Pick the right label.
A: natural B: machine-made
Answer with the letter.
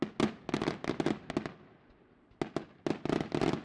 A